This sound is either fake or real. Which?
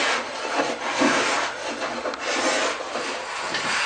real